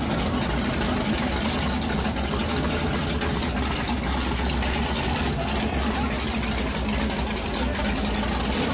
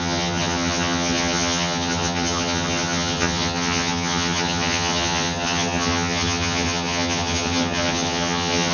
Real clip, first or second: first